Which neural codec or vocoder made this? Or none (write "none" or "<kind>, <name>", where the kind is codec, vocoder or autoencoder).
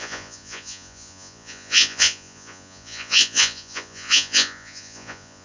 vocoder, Vocos